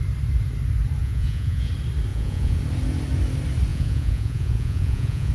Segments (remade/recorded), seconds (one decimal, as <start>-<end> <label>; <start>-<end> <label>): 0.0-1.0 recorded; 1.0-1.7 remade; 1.7-2.1 recorded; 2.1-2.6 remade; 2.6-3.7 recorded; 3.7-5.3 remade